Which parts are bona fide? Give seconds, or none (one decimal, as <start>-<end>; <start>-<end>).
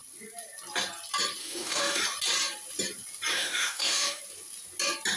0.0-1.4; 2.0-3.3; 4.2-5.2